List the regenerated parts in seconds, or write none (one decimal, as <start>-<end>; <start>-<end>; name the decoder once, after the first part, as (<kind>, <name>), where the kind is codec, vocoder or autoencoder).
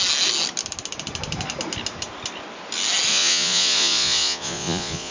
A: 3.1-5.1 (vocoder, Vocos)